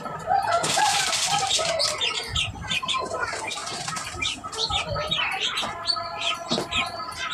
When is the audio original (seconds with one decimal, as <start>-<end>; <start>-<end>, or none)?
3.6-5.1